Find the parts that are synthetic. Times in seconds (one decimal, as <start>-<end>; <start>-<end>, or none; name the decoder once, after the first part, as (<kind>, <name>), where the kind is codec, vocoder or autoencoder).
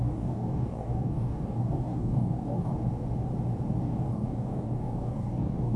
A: 0.0-2.7 (codec, DAC); 3.8-5.8